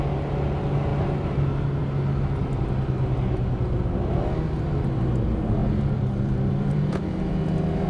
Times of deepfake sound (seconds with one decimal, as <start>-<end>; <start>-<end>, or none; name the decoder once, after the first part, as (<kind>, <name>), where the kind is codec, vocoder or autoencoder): 5.6-7.0 (vocoder, BigVGAN v2)